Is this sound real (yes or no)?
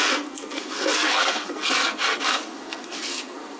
no